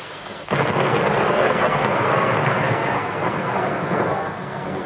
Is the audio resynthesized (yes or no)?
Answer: yes